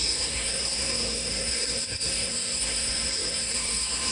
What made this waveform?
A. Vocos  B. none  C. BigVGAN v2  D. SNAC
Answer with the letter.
D